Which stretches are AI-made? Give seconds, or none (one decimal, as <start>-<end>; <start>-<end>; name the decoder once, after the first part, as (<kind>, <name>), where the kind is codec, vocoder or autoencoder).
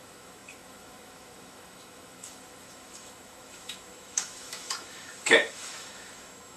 0.0-6.6 (autoencoder, DAC-VAE)